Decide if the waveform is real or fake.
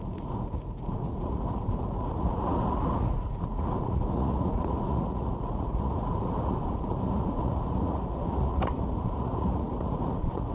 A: fake